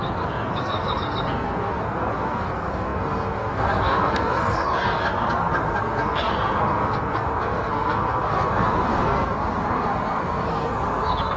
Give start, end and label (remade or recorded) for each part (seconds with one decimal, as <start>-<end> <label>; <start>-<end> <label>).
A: 0.0-11.4 remade